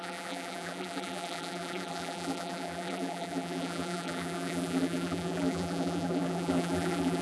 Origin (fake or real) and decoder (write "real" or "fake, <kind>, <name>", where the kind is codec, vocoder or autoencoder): fake, vocoder, BigVGAN v2